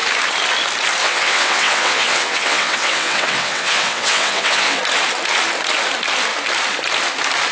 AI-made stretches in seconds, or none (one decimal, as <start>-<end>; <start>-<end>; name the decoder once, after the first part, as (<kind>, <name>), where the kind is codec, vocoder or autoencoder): 1.0-4.8 (vocoder, WaveNeXt)